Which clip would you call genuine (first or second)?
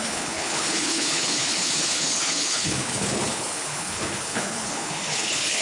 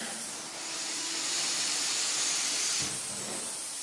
second